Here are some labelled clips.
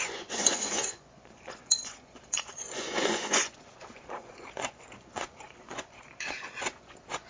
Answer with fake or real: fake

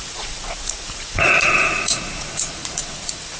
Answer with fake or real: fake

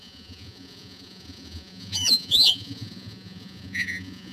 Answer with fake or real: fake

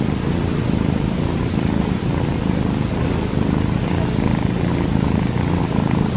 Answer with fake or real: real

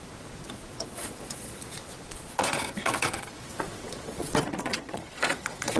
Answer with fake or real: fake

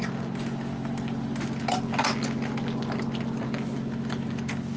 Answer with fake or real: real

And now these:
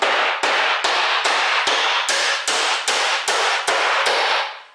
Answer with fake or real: real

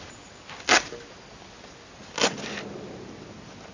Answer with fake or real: real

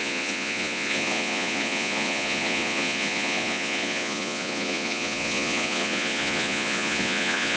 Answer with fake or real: fake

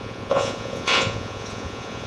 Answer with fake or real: fake